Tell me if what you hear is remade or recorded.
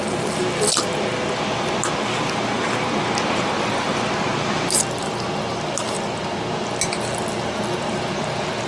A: recorded